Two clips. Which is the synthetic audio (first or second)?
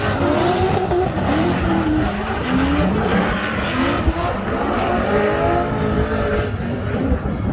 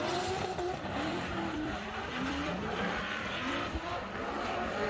second